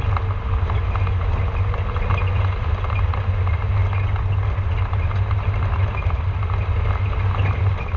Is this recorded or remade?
recorded